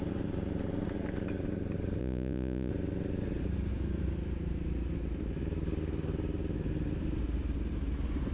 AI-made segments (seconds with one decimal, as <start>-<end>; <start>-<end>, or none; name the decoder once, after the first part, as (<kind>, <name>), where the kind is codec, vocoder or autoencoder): 2.0-2.7 (vocoder, Vocos)